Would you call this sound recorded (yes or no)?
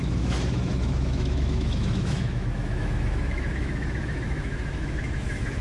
no